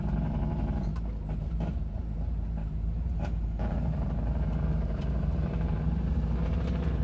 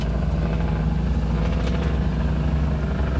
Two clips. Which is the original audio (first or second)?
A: second